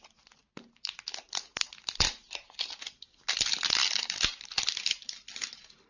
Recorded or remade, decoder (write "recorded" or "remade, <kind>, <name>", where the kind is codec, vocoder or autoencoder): recorded